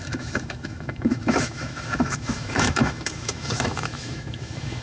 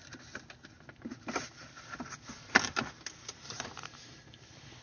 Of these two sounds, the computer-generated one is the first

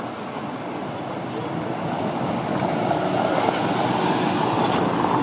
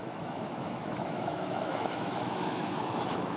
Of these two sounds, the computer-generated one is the second